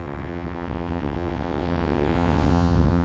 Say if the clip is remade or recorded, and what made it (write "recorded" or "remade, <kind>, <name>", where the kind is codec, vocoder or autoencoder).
remade, vocoder, WaveNeXt